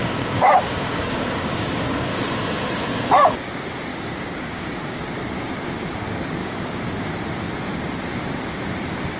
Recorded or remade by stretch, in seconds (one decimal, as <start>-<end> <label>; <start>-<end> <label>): 0.0-2.3 remade; 2.3-3.9 recorded; 3.9-5.0 remade; 5.0-6.4 recorded; 6.4-7.1 remade; 7.1-9.2 recorded